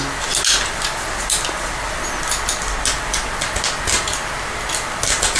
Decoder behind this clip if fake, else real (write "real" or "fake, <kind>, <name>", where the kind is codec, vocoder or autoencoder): real